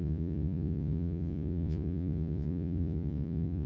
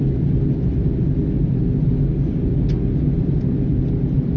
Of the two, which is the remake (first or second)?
first